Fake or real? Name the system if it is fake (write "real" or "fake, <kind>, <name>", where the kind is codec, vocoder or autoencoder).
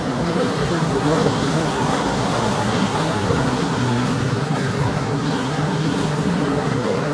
fake, codec, SNAC